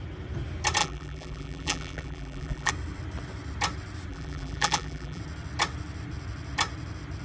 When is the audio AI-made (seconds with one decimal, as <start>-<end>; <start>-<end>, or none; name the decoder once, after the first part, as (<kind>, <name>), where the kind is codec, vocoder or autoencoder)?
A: 0.8-2.7 (vocoder, BigVGAN v2); 4.1-5.2